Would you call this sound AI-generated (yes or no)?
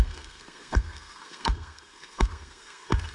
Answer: yes